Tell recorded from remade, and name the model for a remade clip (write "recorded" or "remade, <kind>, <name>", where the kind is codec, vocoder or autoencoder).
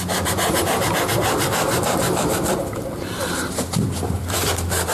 remade, vocoder, BigVGAN v2